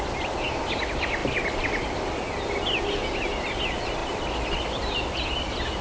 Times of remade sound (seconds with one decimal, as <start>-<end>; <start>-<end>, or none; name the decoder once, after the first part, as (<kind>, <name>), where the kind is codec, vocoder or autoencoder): none